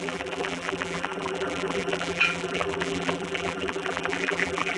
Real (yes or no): no